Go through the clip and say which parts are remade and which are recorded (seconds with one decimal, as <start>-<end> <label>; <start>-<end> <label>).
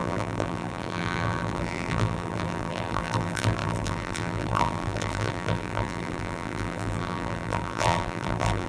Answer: 0.0-8.7 remade